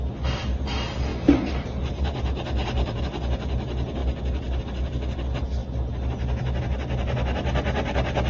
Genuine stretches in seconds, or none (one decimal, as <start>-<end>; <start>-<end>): 0.0-1.1; 3.0-8.3